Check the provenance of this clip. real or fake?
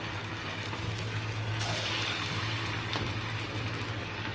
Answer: real